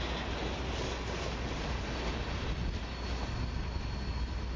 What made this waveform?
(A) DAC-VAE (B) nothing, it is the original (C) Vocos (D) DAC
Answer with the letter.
B